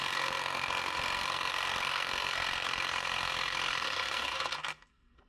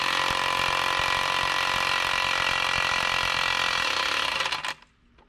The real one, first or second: second